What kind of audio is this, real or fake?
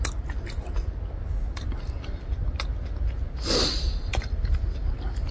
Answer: real